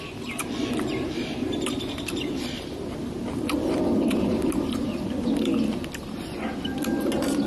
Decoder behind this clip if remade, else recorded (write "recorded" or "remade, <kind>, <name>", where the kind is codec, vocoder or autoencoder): recorded